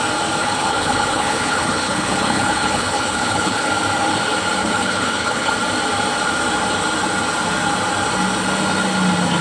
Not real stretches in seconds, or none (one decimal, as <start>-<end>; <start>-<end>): 0.4-3.7; 4.6-5.5